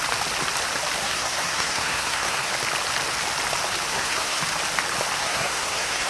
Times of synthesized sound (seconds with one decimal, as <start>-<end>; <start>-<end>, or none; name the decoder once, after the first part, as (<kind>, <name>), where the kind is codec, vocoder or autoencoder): 1.0-2.5 (codec, SNAC); 3.9-4.4; 5.2-6.1